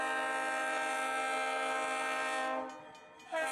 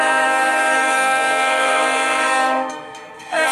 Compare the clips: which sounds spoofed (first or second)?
second